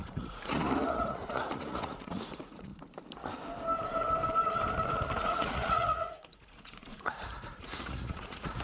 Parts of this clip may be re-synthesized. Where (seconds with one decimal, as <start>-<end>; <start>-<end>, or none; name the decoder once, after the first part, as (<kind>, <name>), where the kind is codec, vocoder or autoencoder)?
0.0-2.7 (vocoder, Vocos); 5.2-8.6